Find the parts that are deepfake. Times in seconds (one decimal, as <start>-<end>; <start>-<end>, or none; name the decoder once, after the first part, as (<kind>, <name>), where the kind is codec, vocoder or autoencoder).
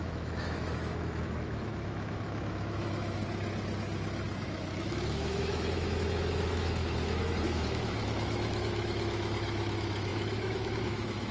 0.0-3.2 (autoencoder, DAC-VAE); 4.4-11.3